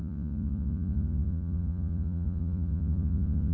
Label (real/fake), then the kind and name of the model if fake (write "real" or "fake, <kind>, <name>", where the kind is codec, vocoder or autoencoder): fake, vocoder, Vocos